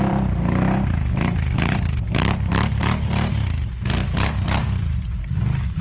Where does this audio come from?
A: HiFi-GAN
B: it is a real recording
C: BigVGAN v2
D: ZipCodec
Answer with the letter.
C